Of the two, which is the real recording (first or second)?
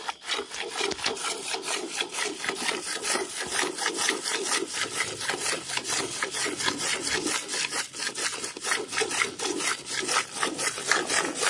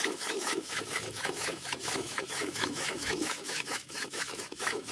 first